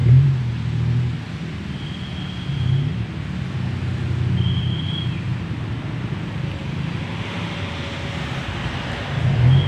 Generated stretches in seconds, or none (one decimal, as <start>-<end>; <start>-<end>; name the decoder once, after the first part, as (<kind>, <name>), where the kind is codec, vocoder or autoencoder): 0.0-0.5 (vocoder, BigVGAN v2)